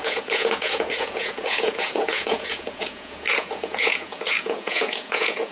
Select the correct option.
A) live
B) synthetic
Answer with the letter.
B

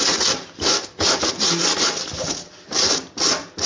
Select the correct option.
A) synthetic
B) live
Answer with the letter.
B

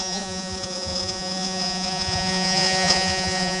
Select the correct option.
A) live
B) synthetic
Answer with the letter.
B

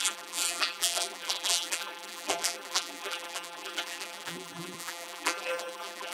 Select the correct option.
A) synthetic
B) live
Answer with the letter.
A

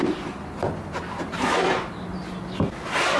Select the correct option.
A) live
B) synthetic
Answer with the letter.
A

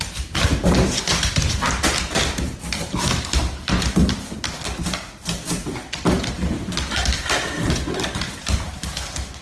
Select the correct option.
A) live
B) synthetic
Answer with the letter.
A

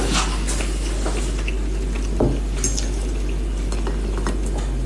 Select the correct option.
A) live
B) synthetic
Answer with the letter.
A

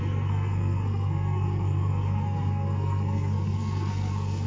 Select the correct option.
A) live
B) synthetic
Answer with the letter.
B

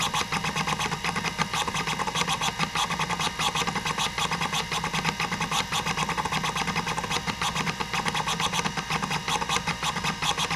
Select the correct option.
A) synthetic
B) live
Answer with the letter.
B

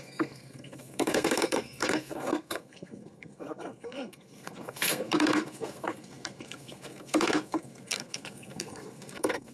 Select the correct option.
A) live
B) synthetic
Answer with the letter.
B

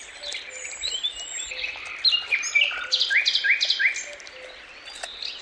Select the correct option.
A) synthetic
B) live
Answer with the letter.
B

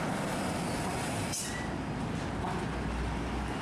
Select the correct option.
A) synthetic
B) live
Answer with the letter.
B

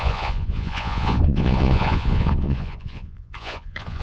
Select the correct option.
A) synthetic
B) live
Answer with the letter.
A